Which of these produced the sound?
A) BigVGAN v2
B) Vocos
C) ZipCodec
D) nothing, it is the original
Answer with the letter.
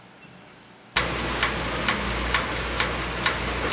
D